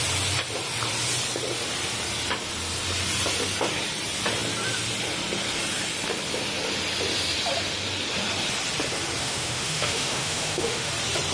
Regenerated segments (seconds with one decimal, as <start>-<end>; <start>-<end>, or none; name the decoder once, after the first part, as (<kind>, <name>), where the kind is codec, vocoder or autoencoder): 9.2-10.9 (autoencoder, DAC-VAE)